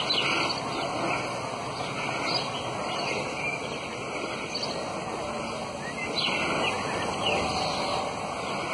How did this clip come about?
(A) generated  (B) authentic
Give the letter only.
B